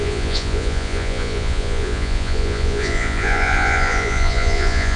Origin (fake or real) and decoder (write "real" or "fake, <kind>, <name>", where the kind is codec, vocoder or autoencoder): fake, vocoder, Vocos